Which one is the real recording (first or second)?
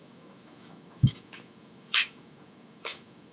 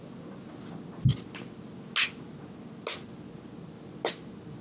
second